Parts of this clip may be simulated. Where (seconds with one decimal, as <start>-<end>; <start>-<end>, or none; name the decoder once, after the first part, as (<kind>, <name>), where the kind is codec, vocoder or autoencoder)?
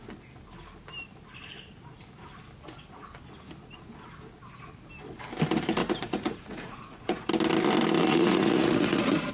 5.8-7.3 (vocoder, Vocos); 8.0-9.3